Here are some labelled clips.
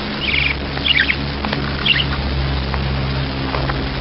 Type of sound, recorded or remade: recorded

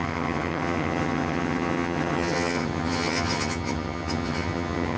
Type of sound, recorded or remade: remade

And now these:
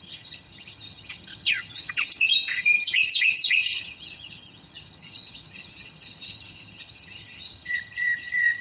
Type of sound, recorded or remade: remade